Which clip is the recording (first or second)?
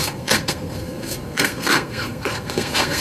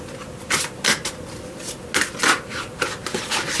second